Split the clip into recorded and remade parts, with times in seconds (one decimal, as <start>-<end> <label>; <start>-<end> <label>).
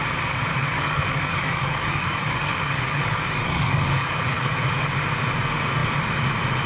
0.0-0.6 recorded; 0.6-4.6 remade; 4.6-6.7 recorded